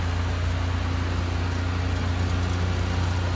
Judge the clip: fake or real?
real